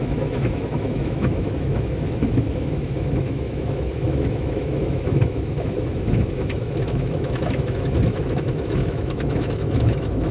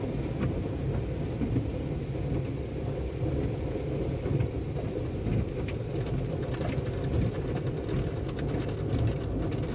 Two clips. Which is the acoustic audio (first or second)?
second